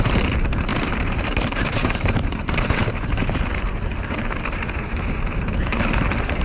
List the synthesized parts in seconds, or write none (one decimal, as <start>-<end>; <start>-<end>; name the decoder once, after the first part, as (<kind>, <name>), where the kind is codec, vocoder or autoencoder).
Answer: 0.0-6.4 (vocoder, BigVGAN v2)